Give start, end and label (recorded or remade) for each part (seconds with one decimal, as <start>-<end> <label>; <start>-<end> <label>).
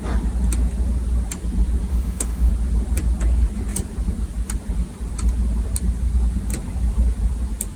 0.0-1.9 recorded; 1.9-2.5 remade; 2.5-7.8 recorded